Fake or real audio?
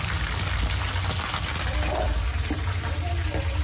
real